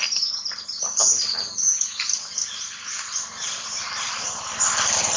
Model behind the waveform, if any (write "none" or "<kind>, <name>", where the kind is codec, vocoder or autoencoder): none